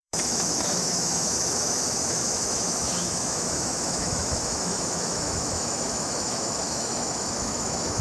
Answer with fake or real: fake